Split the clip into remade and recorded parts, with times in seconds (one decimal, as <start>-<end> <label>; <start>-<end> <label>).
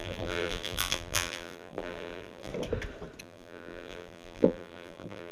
0.0-2.5 remade; 2.5-3.2 recorded; 3.2-5.3 remade